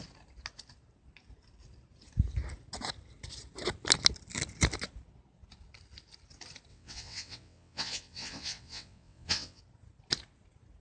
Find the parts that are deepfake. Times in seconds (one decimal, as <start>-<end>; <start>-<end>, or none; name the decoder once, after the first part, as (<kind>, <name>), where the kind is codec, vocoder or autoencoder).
6.7-9.6 (vocoder, WaveNeXt)